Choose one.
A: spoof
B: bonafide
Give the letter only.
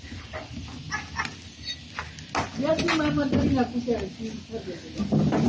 B